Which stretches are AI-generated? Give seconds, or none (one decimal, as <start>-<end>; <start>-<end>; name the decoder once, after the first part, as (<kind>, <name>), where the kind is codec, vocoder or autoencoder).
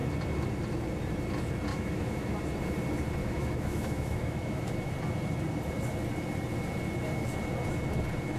1.7-2.3 (autoencoder, DAC-VAE); 3.2-4.9